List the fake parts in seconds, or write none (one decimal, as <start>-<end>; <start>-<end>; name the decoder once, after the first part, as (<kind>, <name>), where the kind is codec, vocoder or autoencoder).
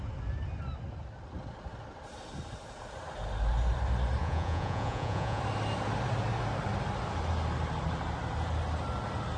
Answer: 4.2-5.4 (vocoder, Vocos)